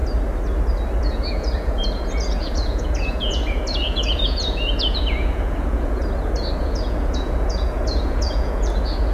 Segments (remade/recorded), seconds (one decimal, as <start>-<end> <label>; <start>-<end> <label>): 0.0-1.0 recorded; 1.0-6.0 remade; 6.0-6.6 recorded; 6.6-9.1 remade